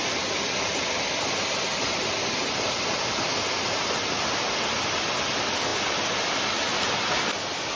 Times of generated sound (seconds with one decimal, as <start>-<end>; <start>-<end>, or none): none